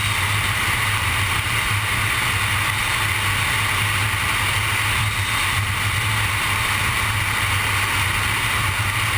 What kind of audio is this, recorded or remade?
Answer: recorded